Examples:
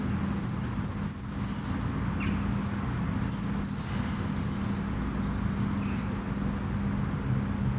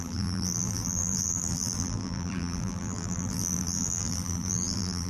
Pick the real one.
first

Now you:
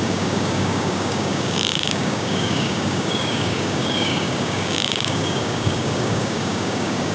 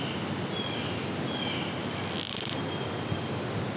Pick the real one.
second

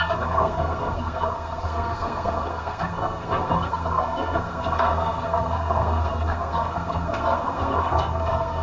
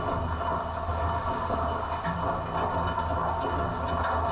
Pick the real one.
second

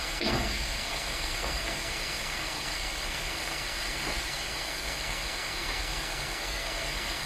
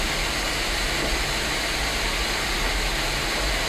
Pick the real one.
second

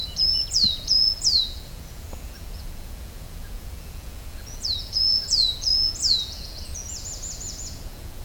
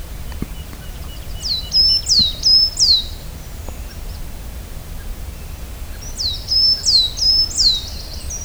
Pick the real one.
second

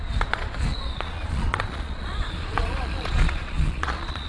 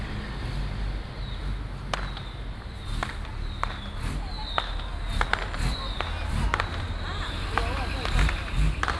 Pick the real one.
second